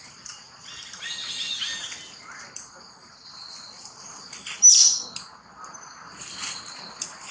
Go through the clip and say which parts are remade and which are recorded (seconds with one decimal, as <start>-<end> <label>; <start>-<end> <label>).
0.0-7.3 recorded